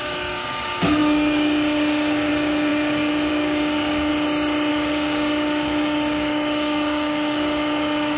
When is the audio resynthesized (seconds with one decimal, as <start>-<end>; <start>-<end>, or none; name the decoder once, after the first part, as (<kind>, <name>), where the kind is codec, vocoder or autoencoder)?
0.0-4.1 (codec, DAC); 4.7-8.2